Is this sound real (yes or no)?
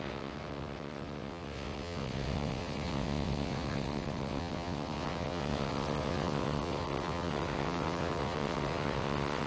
no